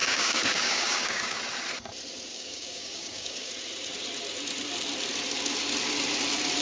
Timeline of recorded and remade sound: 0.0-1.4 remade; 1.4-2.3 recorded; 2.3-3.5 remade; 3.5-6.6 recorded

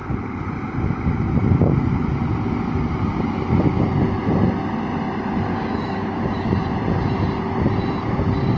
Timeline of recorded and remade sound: 0.0-5.5 recorded; 5.5-6.5 remade; 6.5-8.6 recorded

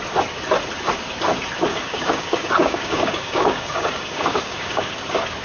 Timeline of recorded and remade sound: 0.0-1.7 recorded; 1.7-4.9 remade; 4.9-5.4 recorded

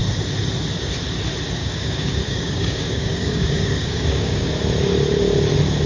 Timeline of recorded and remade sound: 0.0-1.6 recorded; 1.6-4.5 remade; 4.5-5.9 recorded

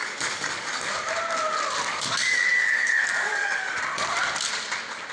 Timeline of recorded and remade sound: 0.0-0.9 remade; 0.9-1.9 recorded; 1.9-3.8 remade; 3.8-5.1 recorded

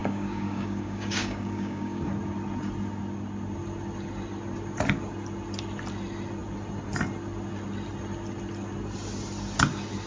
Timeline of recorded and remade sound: 0.0-2.1 remade; 2.1-10.1 recorded